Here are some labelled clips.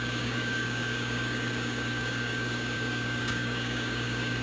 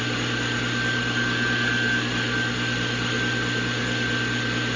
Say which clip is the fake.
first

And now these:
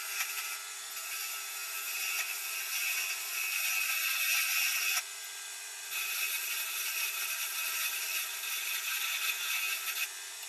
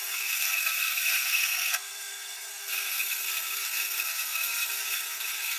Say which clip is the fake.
second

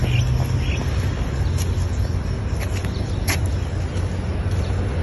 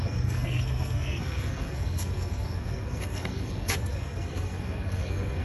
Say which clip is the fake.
second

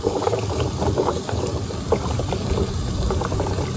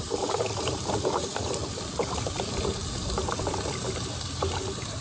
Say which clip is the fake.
second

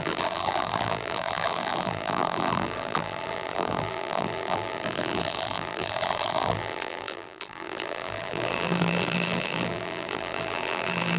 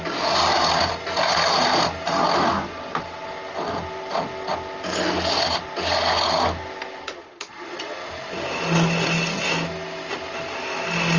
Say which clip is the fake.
first